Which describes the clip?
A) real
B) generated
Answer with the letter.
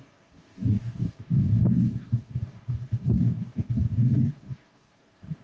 B